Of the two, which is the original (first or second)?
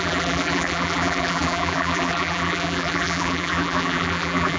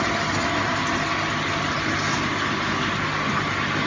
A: second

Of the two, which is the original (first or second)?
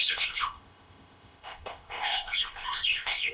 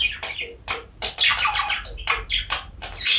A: second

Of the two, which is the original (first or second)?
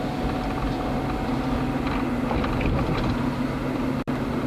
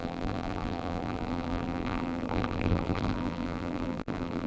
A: first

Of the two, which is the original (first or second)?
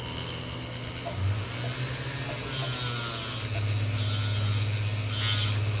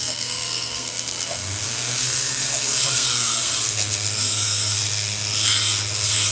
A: first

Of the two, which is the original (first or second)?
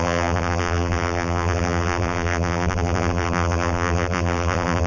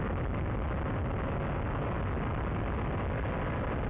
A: second